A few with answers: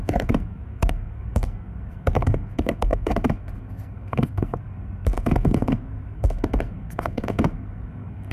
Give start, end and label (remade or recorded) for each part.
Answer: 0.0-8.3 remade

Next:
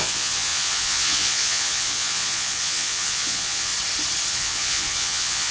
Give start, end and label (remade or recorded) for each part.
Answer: 0.0-3.7 remade; 3.7-4.3 recorded; 4.3-5.5 remade

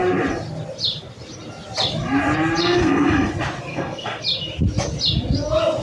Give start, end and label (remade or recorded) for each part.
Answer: 0.0-2.6 recorded; 2.6-3.3 remade; 3.3-3.7 recorded; 3.7-4.2 remade; 4.2-5.8 recorded

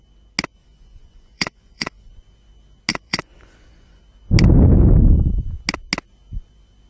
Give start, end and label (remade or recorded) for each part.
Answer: 0.0-0.6 recorded; 0.6-2.1 remade; 2.1-2.9 recorded; 2.9-4.0 remade; 4.0-6.9 recorded

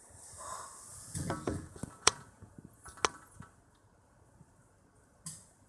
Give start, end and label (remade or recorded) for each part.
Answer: 0.0-0.9 recorded; 0.9-2.5 remade; 2.5-5.7 recorded